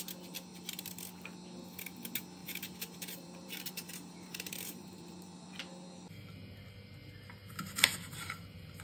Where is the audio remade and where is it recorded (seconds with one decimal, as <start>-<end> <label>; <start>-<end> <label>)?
0.0-0.5 recorded; 0.5-1.0 remade; 1.0-2.4 recorded; 2.4-5.6 remade; 5.6-7.4 recorded; 7.4-8.8 remade